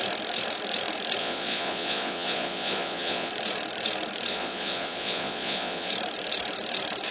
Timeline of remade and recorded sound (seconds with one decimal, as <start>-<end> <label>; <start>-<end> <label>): 0.0-1.2 recorded; 1.2-3.3 remade; 3.3-4.3 recorded; 4.3-5.9 remade; 5.9-7.1 recorded